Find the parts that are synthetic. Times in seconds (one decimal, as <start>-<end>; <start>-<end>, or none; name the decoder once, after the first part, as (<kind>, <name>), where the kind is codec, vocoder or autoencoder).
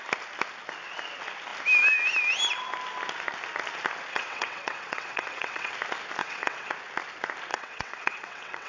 4.1-5.7 (vocoder, WaveNeXt); 6.2-6.7; 7.5-8.7